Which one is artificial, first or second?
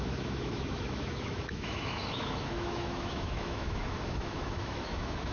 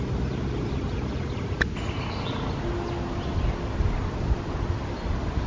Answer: first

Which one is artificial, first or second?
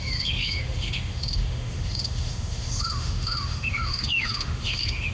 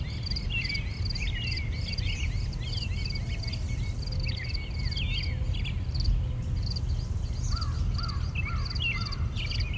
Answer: first